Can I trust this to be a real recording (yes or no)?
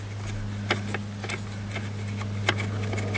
yes